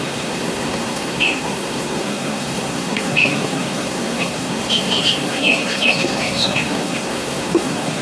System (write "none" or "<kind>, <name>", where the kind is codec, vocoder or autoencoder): codec, SNAC